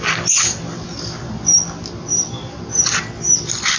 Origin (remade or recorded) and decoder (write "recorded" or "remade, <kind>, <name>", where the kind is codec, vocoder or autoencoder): recorded